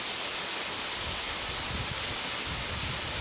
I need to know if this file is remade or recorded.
recorded